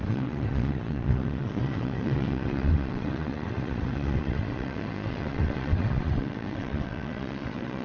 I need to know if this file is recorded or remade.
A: remade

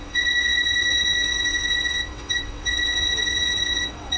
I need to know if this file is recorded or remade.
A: remade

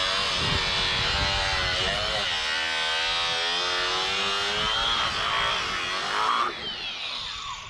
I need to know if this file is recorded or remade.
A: recorded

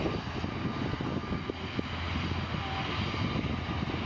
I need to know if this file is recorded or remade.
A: recorded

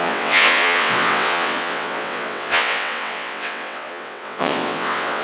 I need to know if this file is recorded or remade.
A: remade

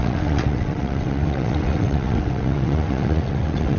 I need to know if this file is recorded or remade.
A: remade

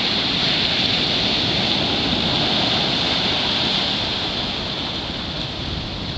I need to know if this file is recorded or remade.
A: recorded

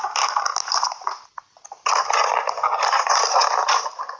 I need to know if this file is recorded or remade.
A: recorded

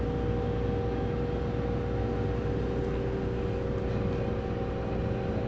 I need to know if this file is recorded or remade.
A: recorded